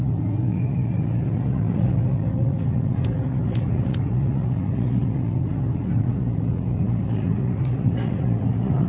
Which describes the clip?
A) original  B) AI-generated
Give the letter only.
B